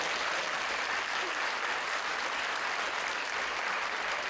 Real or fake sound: real